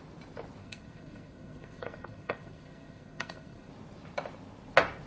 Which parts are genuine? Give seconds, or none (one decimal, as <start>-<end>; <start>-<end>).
0.0-0.6; 3.7-5.1